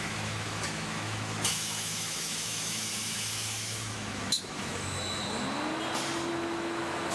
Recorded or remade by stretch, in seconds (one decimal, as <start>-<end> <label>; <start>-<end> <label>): 0.0-5.2 remade; 5.2-6.3 recorded; 6.3-7.1 remade